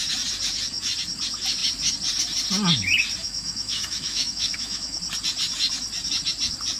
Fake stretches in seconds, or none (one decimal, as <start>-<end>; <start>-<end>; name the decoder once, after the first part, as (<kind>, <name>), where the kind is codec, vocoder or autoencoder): 3.2-5.0 (autoencoder, DAC-VAE)